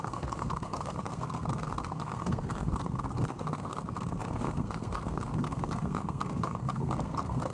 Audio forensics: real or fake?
fake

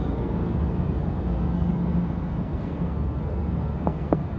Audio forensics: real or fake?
fake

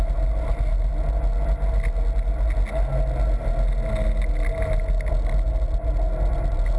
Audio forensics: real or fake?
real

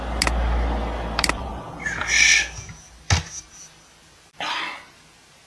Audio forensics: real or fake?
real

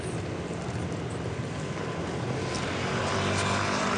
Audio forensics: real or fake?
real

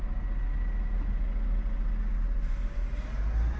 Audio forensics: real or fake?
real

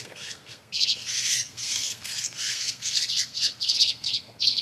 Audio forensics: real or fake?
fake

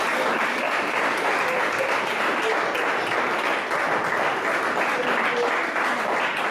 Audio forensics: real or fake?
real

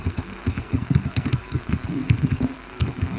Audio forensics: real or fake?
fake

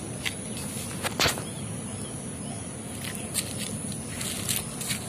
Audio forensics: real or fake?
real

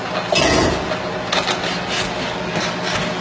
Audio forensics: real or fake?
real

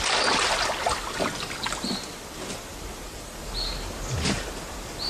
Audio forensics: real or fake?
real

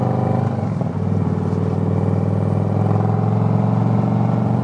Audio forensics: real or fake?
real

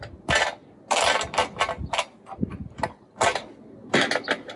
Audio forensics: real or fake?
real